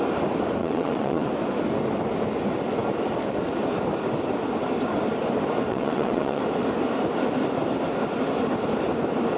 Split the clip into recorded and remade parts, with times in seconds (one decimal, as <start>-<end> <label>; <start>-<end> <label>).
0.0-0.6 recorded; 0.6-1.3 remade; 1.3-5.7 recorded; 5.7-6.4 remade; 6.4-9.4 recorded